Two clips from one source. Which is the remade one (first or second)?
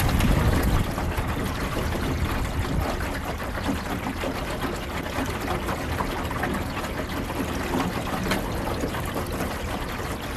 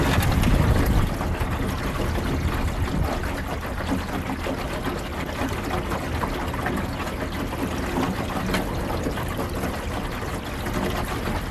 first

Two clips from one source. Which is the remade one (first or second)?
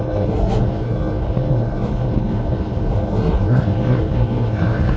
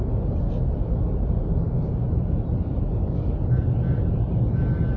first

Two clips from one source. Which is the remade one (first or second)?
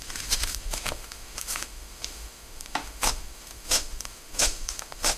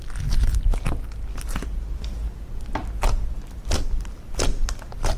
first